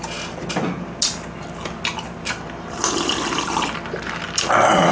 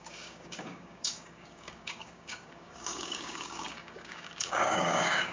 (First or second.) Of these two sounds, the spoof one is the second